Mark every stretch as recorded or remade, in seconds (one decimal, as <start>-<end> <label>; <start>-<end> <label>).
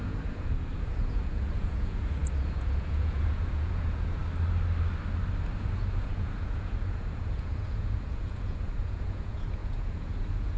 0.0-4.2 remade; 4.2-5.6 recorded; 5.6-10.6 remade